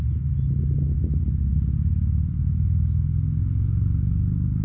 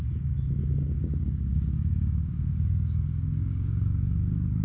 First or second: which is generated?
second